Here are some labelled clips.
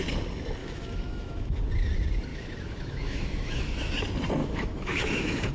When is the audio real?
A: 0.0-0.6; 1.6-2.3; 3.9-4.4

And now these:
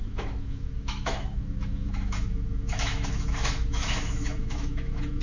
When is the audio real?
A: none

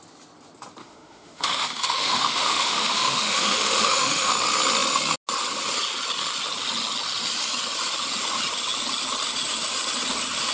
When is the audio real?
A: 0.0-0.8; 4.3-10.5

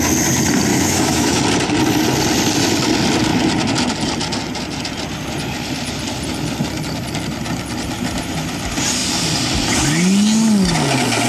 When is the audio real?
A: 0.0-0.7; 1.4-11.3

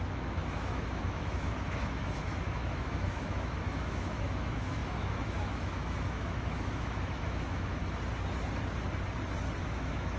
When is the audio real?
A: 7.8-9.6

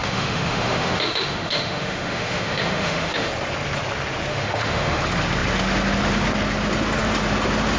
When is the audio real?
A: 3.3-4.3; 5.0-7.8

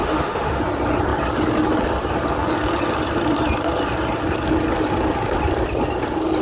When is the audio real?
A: 0.6-6.4